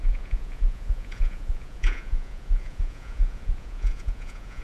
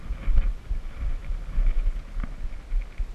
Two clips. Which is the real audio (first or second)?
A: second